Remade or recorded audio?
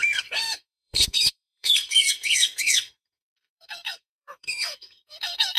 remade